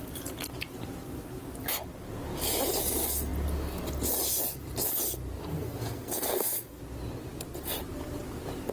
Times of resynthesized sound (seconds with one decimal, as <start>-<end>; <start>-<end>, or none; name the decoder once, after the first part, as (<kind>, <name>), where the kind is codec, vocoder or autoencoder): 5.5-6.8 (codec, SNAC)